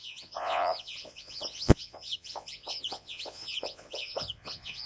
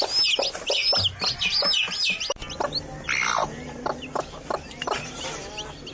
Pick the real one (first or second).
second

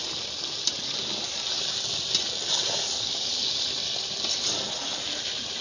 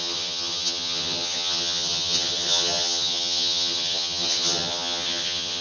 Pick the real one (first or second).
first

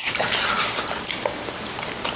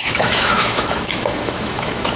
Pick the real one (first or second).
first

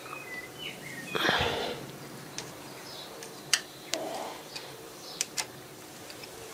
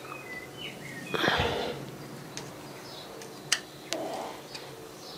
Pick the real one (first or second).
second